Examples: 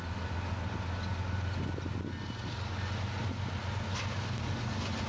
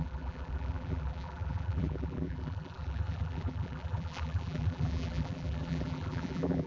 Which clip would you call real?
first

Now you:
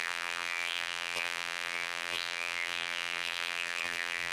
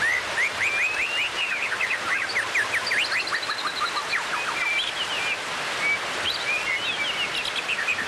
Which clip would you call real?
second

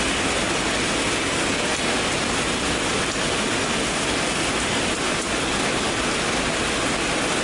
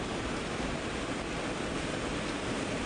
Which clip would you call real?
first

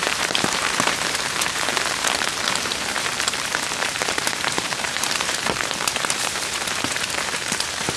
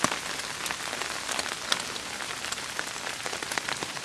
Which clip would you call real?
second